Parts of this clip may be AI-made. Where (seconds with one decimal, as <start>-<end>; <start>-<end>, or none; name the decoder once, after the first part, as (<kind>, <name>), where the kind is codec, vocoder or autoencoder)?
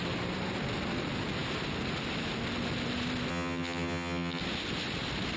3.3-4.4 (vocoder, HiFi-GAN)